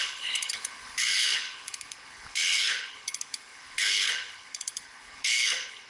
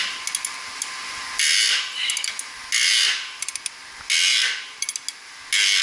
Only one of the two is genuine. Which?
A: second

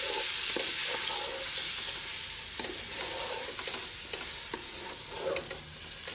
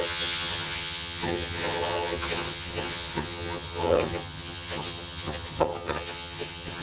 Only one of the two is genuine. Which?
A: first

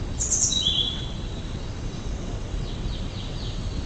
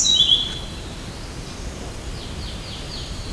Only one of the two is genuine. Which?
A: second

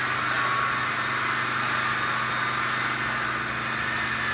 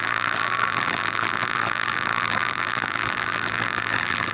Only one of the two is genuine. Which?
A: first